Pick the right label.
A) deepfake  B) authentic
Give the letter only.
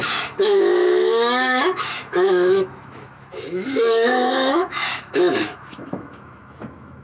A